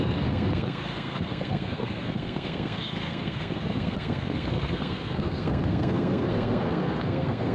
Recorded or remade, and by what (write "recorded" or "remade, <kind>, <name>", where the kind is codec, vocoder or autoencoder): remade, codec, SNAC